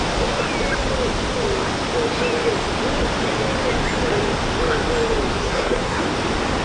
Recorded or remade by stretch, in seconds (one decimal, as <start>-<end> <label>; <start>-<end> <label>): 0.0-5.4 recorded; 5.4-6.0 remade; 6.0-6.6 recorded